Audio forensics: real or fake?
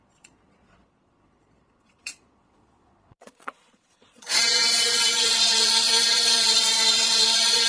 fake